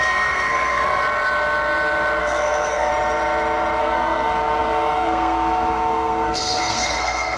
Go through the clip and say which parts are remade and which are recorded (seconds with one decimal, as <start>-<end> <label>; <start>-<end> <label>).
0.0-1.0 remade; 1.0-2.2 recorded; 2.2-2.9 remade; 2.9-3.8 recorded; 3.8-7.4 remade